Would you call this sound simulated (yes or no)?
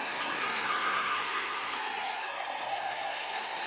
yes